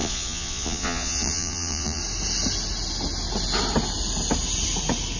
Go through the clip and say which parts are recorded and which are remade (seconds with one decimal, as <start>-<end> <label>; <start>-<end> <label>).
0.0-2.0 remade; 2.0-5.2 recorded